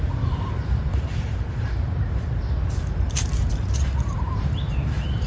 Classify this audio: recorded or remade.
remade